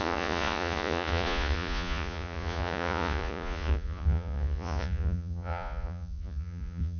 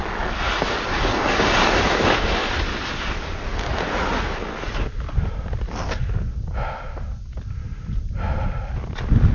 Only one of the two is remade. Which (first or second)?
first